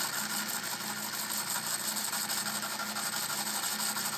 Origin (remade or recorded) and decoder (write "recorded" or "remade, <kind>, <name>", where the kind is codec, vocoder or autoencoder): recorded